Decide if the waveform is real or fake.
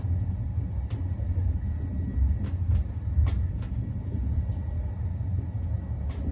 real